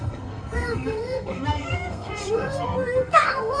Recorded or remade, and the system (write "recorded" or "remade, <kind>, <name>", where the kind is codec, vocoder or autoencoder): remade, codec, SNAC